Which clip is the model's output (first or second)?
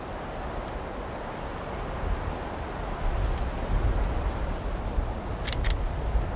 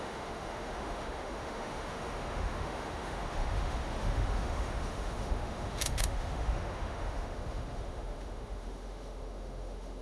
second